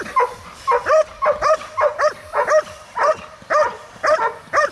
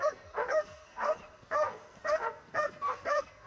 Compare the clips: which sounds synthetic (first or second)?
second